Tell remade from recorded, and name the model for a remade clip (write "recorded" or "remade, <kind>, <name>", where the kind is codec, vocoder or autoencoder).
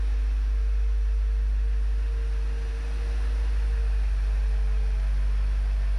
recorded